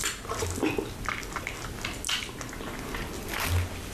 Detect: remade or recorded recorded